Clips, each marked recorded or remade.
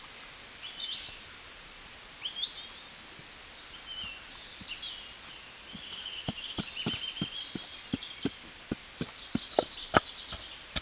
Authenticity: recorded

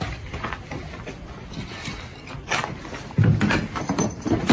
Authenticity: recorded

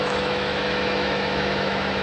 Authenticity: remade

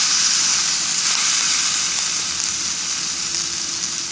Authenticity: recorded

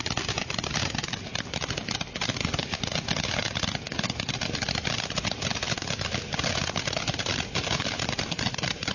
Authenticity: recorded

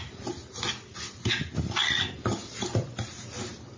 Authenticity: recorded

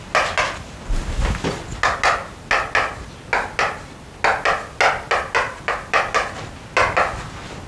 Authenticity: recorded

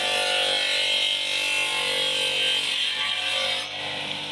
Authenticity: recorded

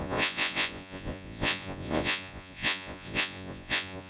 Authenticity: remade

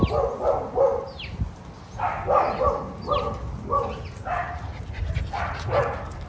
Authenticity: recorded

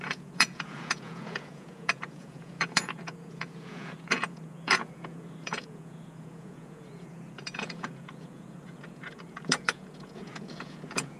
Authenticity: remade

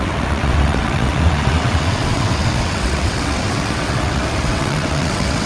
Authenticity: remade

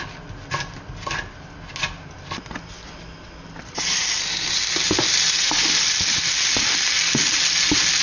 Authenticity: recorded